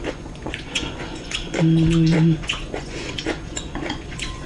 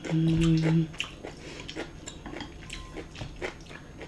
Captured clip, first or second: second